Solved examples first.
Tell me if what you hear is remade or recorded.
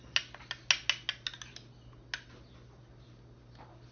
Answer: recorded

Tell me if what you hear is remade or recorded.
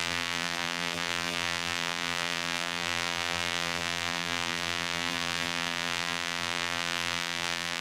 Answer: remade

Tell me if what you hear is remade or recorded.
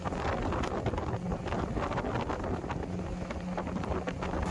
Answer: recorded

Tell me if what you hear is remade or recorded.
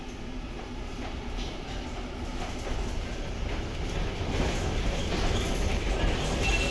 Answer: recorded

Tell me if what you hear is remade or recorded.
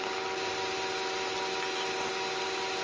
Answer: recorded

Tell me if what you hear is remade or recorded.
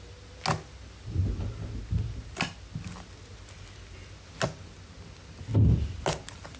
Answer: recorded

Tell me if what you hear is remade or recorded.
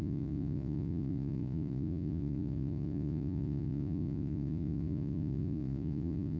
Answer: remade